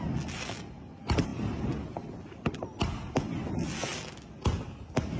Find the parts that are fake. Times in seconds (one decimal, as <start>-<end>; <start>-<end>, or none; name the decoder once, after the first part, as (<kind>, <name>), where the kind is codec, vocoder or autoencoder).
none

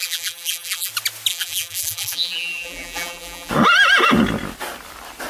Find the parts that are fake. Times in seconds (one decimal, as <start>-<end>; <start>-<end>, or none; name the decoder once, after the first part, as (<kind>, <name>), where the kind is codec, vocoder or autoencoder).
0.0-0.9 (vocoder, BigVGAN v2); 1.3-3.5

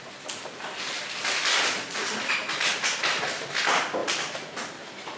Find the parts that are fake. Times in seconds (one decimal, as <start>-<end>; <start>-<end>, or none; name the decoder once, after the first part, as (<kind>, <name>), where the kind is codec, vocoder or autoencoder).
4.0-5.2 (vocoder, BigVGAN v2)

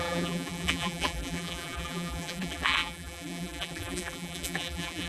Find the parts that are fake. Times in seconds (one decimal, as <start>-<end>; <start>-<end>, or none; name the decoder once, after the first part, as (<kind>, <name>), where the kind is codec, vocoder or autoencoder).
0.0-5.1 (vocoder, BigVGAN v2)

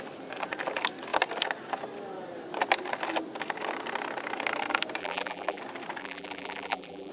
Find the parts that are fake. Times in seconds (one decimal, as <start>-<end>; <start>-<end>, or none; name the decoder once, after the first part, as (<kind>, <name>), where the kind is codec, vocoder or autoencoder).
5.0-5.6 (vocoder, BigVGAN v2); 6.0-7.1

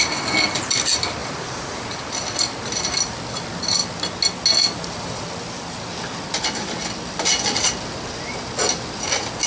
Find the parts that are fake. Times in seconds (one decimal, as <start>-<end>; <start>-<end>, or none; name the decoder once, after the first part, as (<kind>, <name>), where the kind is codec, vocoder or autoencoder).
1.2-1.9 (vocoder, BigVGAN v2)

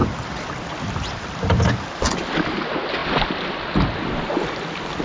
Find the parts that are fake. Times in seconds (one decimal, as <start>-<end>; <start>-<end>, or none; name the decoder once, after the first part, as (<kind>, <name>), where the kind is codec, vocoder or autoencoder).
0.0-1.6 (vocoder, BigVGAN v2)